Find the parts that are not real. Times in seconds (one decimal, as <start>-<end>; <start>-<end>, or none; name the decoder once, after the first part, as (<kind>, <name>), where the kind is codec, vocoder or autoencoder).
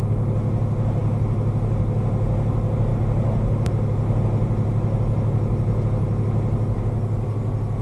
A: none